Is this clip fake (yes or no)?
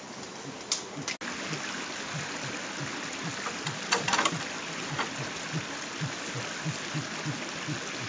no